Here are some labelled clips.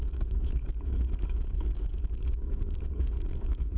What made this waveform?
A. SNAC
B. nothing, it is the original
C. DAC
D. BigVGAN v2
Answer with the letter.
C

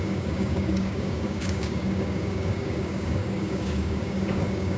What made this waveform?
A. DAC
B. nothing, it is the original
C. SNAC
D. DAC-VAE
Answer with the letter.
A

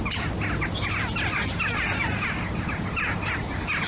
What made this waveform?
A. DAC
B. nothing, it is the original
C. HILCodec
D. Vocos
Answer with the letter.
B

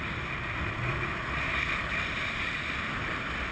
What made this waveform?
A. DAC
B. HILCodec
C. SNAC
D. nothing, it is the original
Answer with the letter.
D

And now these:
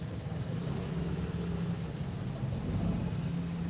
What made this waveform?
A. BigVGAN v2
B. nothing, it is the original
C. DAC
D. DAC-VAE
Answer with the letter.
B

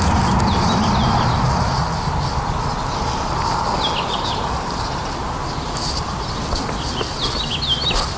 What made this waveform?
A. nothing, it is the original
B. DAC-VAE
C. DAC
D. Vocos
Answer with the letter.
A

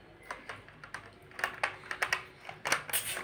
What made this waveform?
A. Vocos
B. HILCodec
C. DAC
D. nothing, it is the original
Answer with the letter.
D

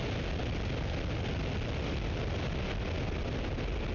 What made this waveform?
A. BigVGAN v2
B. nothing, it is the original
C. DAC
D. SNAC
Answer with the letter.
B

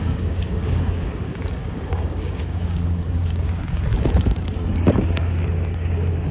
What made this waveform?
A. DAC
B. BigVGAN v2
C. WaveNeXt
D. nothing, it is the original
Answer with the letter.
A